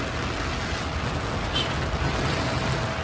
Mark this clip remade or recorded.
recorded